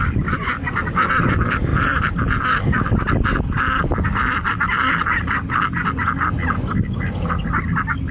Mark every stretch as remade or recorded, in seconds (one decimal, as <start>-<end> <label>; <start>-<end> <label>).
0.0-8.1 recorded